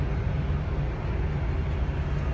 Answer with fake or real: real